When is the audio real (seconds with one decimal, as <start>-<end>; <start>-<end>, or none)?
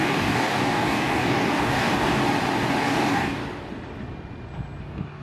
2.2-2.8; 3.4-4.8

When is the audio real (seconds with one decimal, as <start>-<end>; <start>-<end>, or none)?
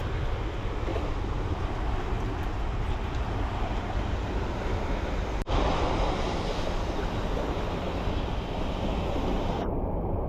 0.0-0.9; 5.1-9.3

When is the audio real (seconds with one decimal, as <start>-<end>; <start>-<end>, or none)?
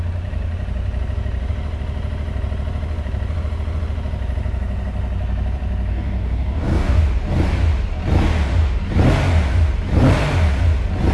0.0-5.9; 7.0-11.1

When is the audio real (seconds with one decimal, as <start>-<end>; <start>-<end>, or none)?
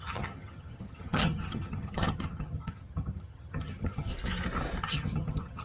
4.1-4.8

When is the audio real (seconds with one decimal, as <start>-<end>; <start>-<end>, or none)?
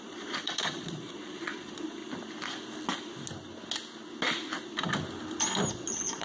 2.0-5.7